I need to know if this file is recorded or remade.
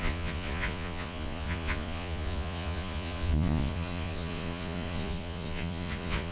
remade